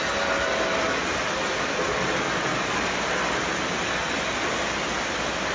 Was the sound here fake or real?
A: real